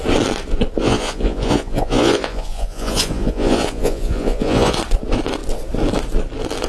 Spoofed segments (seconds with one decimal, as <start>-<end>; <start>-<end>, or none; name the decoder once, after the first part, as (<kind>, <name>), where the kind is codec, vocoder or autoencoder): 0.8-4.8 (vocoder, Vocos)